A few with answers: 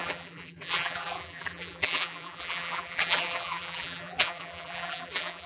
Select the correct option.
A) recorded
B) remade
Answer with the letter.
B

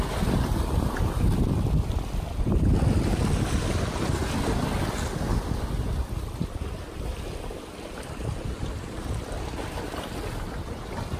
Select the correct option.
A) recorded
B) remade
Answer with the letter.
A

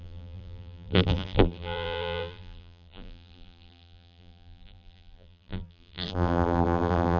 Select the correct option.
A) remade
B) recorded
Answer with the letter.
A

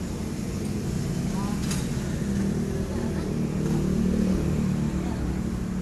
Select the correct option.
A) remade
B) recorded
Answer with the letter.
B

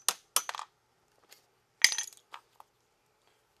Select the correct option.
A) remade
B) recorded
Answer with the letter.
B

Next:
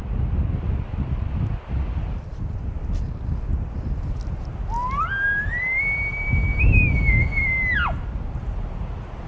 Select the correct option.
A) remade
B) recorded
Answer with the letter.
B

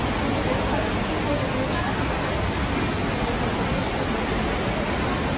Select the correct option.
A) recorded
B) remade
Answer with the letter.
A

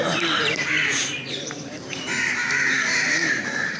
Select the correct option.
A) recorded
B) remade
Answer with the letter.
B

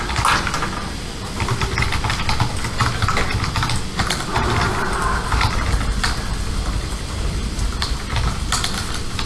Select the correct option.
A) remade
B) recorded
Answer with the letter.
B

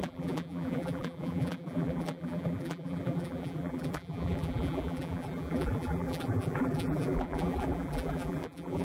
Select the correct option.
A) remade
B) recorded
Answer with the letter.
A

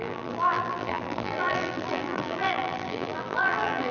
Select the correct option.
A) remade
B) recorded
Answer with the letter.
A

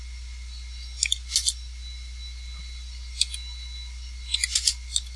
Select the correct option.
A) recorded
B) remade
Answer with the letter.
A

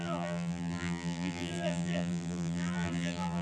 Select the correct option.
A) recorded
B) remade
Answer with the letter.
B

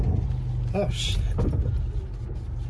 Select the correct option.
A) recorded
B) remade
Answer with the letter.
A